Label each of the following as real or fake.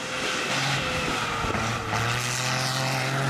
real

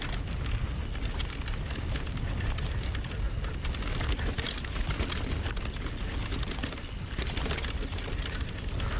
real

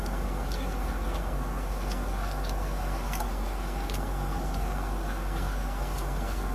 fake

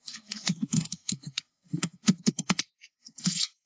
fake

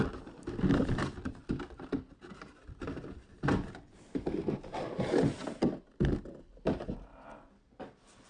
real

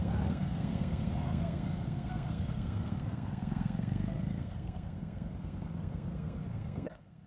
fake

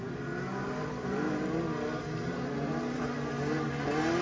real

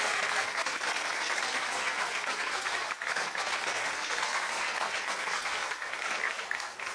fake